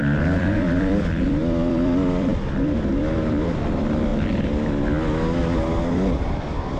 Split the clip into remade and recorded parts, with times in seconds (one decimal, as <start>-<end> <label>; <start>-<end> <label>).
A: 0.0-4.1 remade; 4.1-6.8 recorded